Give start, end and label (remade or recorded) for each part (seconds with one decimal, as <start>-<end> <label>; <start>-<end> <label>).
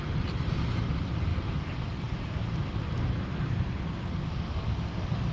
0.0-5.3 recorded